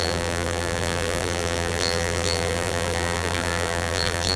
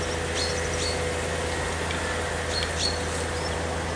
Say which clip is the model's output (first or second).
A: first